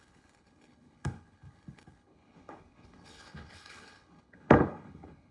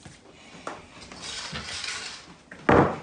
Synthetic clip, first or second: first